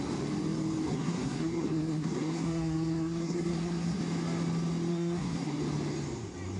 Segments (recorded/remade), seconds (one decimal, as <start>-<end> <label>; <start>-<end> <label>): 0.0-0.9 recorded; 0.9-4.0 remade; 4.0-4.9 recorded; 4.9-5.6 remade; 5.6-6.6 recorded